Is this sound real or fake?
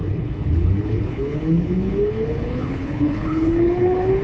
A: fake